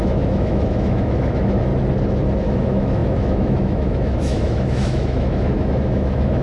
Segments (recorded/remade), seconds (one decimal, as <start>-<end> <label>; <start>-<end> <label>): 0.0-1.7 remade; 1.7-2.4 recorded; 2.4-6.4 remade